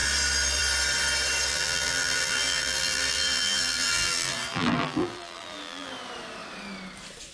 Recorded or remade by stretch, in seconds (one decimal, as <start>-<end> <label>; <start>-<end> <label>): 0.0-1.5 recorded; 1.5-5.9 remade; 5.9-7.3 recorded